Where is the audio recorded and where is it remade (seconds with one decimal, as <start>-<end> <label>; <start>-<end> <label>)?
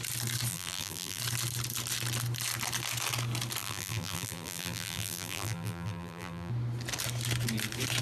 0.0-0.5 recorded; 0.5-1.2 remade; 1.2-3.6 recorded; 3.6-6.5 remade; 6.5-8.0 recorded